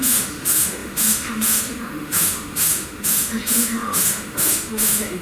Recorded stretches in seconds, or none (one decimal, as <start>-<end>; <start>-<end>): none